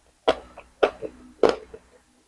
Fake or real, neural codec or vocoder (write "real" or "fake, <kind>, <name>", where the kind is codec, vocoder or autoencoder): real